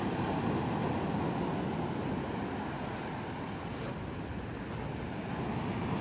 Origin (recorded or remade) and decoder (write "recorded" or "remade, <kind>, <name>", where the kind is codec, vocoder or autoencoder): recorded